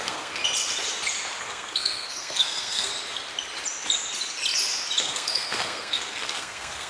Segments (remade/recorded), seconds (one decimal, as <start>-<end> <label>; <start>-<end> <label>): 0.0-0.4 remade; 0.4-1.4 recorded; 1.4-2.9 remade; 2.9-5.0 recorded; 5.0-6.9 remade